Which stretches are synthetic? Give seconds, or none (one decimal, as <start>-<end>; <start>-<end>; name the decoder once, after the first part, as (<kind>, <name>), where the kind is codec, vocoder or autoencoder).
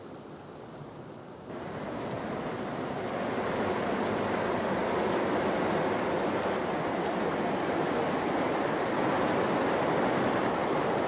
none